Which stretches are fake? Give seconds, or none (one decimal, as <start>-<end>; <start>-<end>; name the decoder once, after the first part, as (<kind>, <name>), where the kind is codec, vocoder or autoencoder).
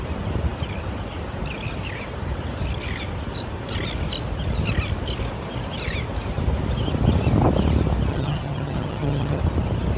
8.1-9.4 (vocoder, HiFi-GAN)